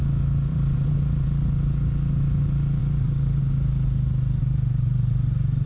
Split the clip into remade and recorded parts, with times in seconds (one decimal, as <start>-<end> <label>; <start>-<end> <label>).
0.0-0.5 recorded; 0.5-1.3 remade; 1.3-2.8 recorded; 2.8-3.4 remade; 3.4-4.4 recorded; 4.4-5.1 remade; 5.1-5.7 recorded